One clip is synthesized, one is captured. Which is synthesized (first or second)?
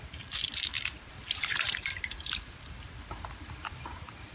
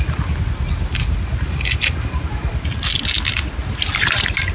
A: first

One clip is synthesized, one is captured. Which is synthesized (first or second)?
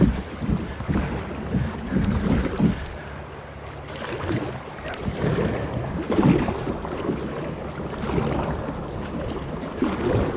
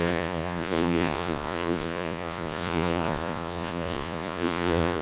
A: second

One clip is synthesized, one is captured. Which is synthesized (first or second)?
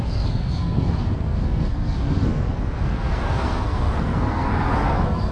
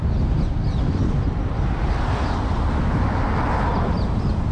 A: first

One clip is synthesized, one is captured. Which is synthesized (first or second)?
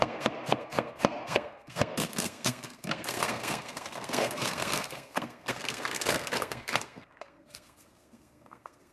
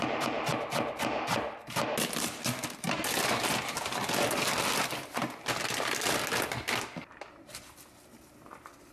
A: first